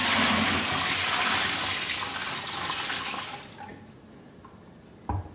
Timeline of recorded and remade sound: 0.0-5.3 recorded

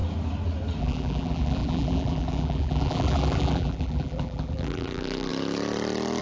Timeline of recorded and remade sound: 0.0-0.8 recorded; 0.8-5.3 remade; 5.3-6.2 recorded

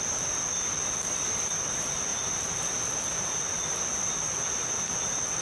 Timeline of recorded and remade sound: 0.0-5.4 recorded

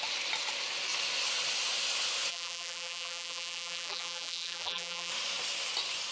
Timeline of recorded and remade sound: 0.0-2.3 recorded; 2.3-5.1 remade; 5.1-6.1 recorded

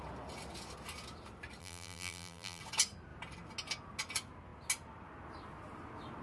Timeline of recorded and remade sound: 0.0-1.6 recorded; 1.6-2.6 remade; 2.6-6.2 recorded